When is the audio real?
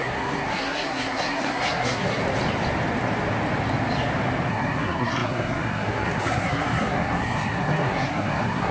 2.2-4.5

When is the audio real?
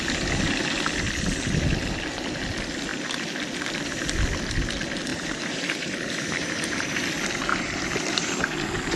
0.0-5.1; 7.0-7.5; 8.3-9.0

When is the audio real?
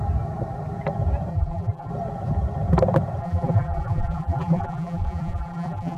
0.0-1.3; 1.9-3.2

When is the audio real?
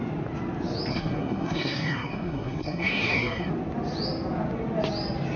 0.0-0.9; 3.5-5.4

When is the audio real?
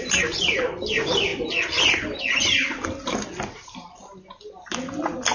0.0-5.3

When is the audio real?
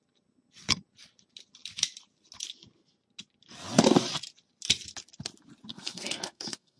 0.0-5.7